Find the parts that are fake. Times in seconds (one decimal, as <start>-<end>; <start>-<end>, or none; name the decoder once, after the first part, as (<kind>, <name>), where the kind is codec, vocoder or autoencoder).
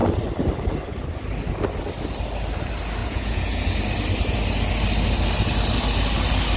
3.0-3.6 (vocoder, Vocos)